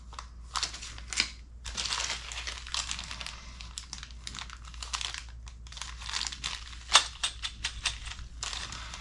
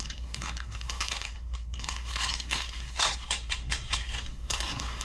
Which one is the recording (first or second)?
first